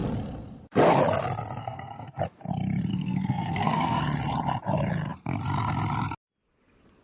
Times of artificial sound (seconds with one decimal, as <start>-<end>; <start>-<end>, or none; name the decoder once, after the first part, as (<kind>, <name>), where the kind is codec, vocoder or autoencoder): 1.6-2.2 (codec, SNAC); 2.9-4.0